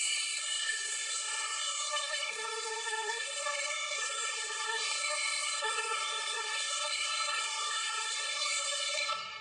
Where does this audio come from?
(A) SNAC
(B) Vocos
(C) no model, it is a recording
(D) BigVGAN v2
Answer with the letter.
A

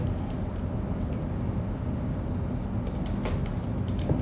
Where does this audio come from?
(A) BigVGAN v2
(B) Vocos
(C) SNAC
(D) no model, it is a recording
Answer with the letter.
D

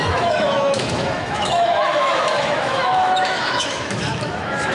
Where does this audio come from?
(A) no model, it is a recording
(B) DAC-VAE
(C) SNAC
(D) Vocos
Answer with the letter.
B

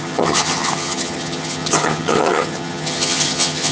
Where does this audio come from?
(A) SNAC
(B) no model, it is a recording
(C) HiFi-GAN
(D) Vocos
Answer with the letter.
C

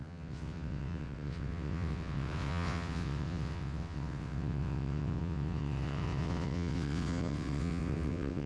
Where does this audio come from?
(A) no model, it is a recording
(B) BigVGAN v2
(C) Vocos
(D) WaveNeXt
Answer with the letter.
D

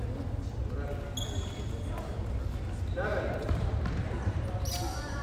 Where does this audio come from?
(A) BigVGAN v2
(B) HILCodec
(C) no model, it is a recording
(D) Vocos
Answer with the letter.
C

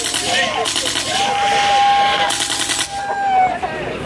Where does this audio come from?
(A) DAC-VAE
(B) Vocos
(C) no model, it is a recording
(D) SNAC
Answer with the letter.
C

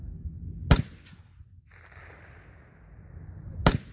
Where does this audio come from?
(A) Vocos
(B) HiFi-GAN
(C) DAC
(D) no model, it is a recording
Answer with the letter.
D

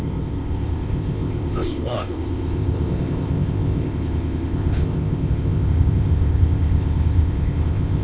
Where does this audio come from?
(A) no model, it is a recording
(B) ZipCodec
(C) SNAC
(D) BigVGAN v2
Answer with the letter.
B